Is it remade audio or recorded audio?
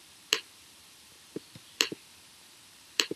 remade